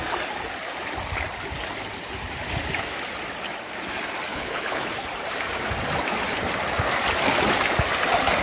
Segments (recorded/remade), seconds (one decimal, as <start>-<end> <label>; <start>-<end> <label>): 0.0-4.3 recorded; 4.3-4.9 remade; 4.9-8.4 recorded